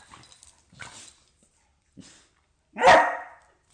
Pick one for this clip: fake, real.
real